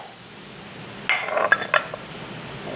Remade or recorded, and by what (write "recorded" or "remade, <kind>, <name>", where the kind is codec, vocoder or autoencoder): recorded